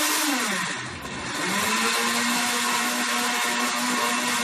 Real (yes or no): yes